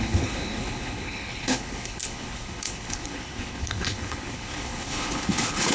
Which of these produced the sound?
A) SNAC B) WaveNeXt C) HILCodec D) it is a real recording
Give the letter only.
C